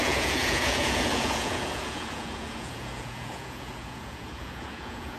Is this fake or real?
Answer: fake